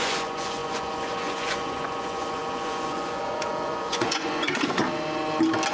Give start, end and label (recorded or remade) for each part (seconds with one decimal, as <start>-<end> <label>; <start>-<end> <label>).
0.0-4.8 remade; 4.8-5.7 recorded